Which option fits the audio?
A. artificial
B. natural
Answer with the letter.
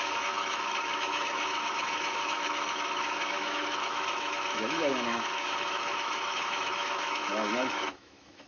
A